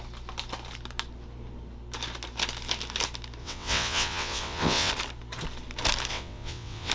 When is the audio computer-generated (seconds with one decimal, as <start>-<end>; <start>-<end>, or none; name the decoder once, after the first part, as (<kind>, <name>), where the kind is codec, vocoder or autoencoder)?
3.4-4.9 (vocoder, WaveNeXt); 6.1-6.9